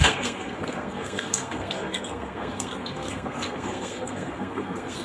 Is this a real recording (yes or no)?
no